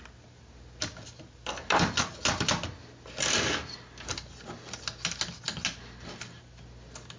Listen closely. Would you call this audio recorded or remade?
recorded